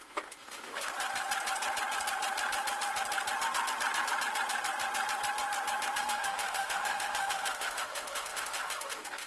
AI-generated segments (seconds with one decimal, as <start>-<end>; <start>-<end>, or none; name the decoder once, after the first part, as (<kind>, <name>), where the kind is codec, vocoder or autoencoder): 0.0-0.9 (autoencoder, DAC-VAE); 6.0-9.3